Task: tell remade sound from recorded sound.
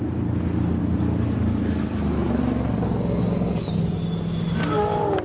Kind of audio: recorded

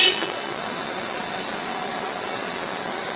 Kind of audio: remade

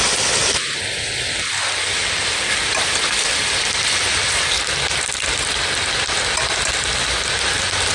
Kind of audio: recorded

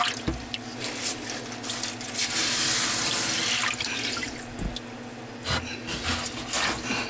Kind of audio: recorded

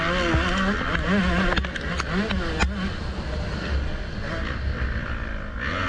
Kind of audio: recorded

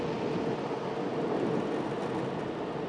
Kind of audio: recorded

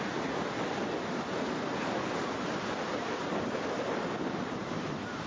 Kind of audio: recorded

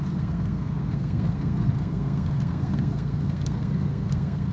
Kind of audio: remade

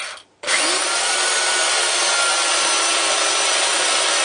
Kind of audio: recorded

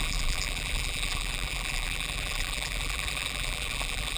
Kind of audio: remade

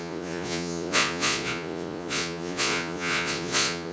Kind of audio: remade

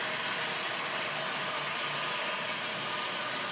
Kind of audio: recorded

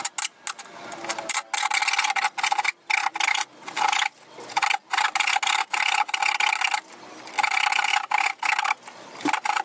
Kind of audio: recorded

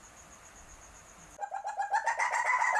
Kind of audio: recorded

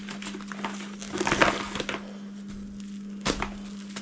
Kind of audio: recorded